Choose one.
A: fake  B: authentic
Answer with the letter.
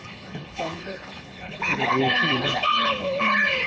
A